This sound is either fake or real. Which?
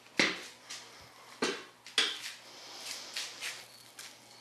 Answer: real